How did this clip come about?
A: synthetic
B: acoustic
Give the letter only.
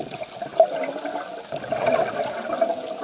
B